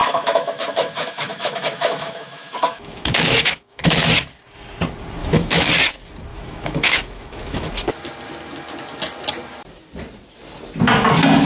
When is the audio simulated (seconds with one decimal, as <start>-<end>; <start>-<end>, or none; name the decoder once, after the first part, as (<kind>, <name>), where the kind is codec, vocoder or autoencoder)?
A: 0.0-3.9 (autoencoder, DAC-VAE); 5.2-5.7; 6.3-7.7